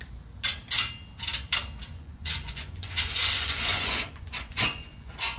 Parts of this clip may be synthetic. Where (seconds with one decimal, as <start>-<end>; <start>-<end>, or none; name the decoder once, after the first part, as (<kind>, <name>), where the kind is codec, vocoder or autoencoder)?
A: 1.9-5.4 (vocoder, Vocos)